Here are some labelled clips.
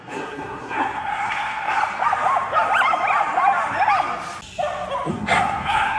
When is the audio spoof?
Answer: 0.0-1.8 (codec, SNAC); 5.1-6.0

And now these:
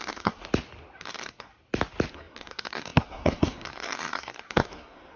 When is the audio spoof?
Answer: 0.0-0.4 (codec, SNAC); 1.0-1.5; 2.1-5.2

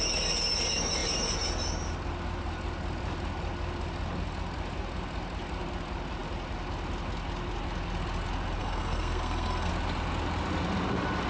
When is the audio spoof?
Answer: 8.6-9.7 (codec, SNAC)

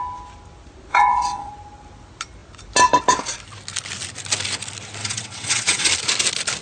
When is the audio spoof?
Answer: 0.9-1.5 (vocoder, WaveNeXt); 5.0-5.9